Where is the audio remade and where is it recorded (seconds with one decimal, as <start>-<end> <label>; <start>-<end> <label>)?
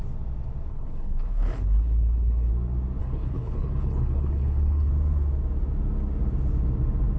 0.0-0.7 recorded; 0.7-2.5 remade; 2.5-3.0 recorded; 3.0-4.9 remade; 4.9-7.2 recorded